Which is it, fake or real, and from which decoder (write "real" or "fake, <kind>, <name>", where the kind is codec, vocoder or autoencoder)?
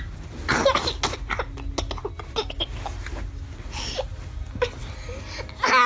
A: real